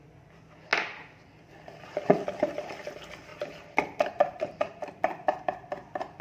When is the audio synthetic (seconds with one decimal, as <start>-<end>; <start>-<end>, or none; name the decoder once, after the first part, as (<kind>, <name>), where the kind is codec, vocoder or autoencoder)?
3.3-5.4 (vocoder, BigVGAN v2)